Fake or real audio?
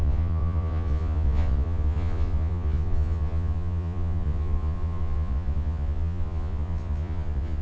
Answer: fake